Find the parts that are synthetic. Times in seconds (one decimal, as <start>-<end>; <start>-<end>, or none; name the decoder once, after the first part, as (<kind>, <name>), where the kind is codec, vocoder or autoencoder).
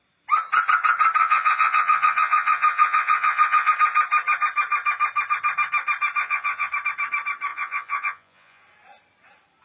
1.2-3.7 (vocoder, Vocos); 6.2-6.7; 7.5-8.6